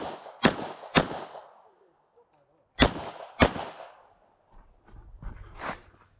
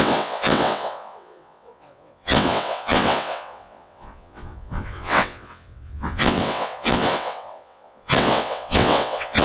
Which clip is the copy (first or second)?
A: second